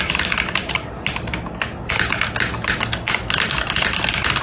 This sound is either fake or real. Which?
real